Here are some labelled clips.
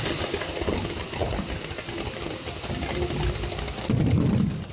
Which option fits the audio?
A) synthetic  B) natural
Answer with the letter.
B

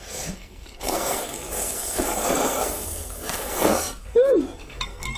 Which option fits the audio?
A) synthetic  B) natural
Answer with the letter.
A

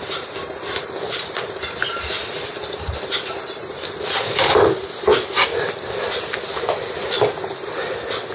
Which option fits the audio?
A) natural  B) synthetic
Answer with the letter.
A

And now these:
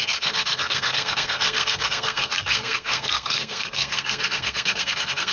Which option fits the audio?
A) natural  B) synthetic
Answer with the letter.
B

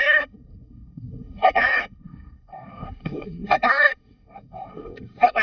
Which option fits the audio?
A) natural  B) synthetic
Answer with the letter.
B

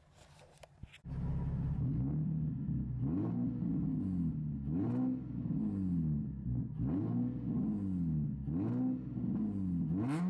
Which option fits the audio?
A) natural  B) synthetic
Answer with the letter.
A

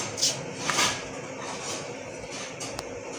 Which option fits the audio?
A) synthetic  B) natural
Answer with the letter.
B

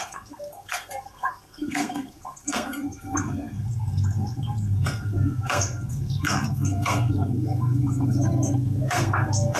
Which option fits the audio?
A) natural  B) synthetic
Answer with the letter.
B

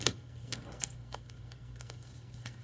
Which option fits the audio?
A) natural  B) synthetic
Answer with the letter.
B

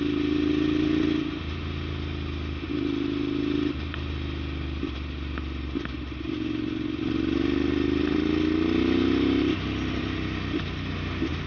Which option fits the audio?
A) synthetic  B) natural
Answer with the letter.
B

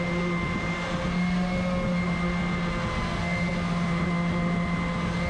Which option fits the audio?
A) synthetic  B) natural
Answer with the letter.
B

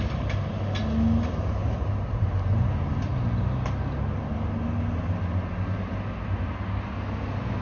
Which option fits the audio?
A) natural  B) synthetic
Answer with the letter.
A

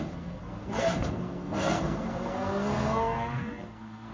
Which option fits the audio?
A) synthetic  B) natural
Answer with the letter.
A